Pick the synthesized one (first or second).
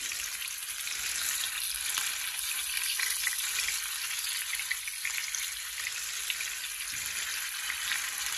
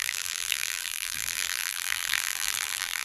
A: second